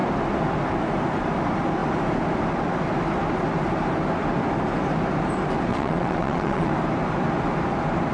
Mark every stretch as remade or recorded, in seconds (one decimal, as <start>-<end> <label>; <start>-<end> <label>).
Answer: 0.0-5.7 recorded; 5.7-6.7 remade; 6.7-8.1 recorded